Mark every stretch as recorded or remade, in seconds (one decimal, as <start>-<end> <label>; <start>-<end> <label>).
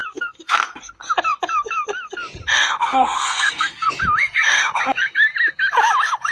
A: 0.0-0.8 remade; 0.8-2.8 recorded; 2.8-3.9 remade; 3.9-6.3 recorded